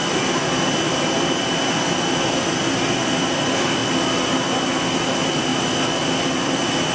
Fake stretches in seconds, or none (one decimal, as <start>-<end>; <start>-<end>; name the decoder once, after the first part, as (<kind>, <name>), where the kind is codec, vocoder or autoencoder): 0.0-3.8 (vocoder, BigVGAN v2); 5.1-5.5